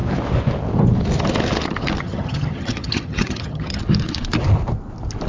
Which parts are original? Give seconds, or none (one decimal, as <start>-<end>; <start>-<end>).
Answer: 0.0-2.0; 3.8-5.3